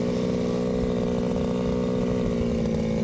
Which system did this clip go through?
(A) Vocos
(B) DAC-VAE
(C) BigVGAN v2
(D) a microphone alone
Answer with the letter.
D